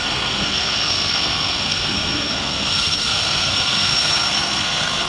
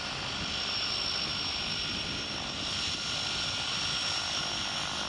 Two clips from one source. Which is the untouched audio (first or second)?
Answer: second